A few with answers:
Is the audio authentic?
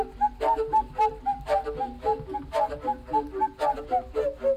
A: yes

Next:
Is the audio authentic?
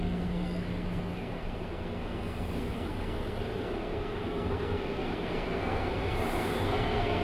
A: no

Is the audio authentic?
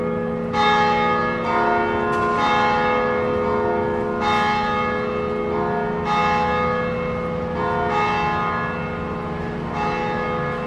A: yes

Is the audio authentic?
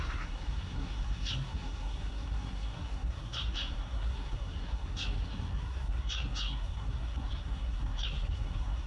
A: no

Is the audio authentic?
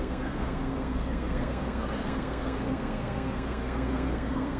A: no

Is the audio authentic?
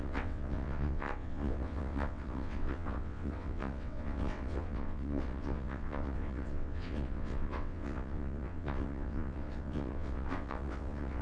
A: no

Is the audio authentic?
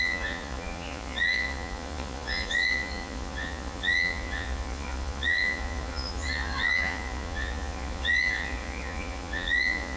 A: no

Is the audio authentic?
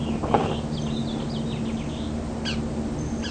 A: yes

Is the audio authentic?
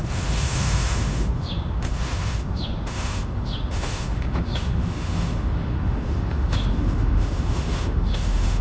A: no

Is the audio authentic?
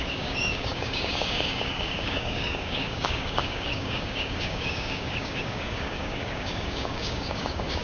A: no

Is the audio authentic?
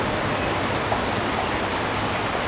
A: yes